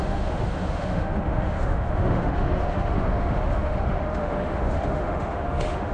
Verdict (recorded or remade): remade